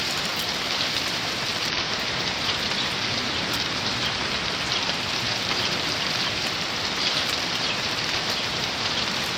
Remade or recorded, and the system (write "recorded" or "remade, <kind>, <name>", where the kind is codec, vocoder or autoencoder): remade, vocoder, BigVGAN v2